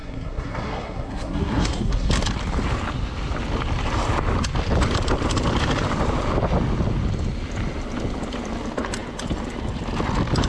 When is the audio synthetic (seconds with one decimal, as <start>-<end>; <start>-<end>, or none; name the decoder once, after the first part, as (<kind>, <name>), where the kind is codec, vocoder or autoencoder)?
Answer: 0.0-2.1 (codec, SNAC)